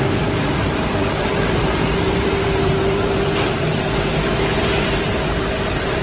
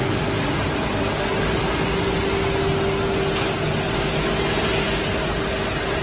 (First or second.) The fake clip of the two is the first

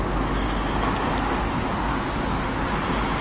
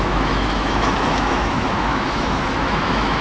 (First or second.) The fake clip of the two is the second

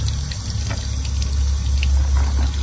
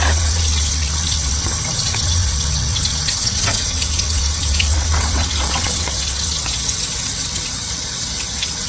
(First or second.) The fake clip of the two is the second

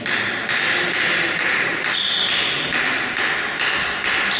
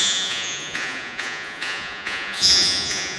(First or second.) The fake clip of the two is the second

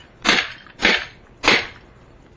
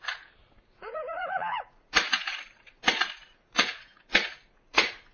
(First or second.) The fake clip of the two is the second